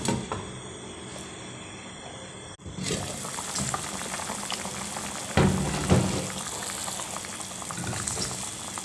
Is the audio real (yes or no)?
yes